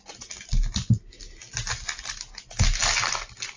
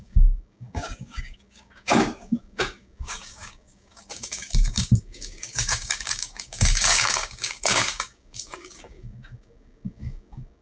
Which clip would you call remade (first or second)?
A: second